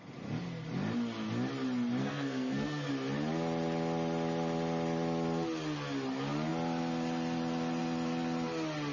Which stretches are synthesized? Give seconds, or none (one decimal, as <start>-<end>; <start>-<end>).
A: 2.0-2.9

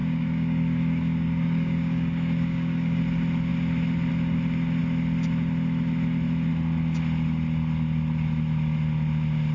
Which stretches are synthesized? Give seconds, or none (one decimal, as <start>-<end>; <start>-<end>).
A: 0.0-3.0